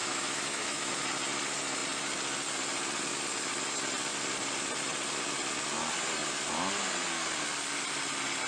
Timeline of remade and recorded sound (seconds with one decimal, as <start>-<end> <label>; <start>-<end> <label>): 0.0-0.9 remade; 0.9-8.5 recorded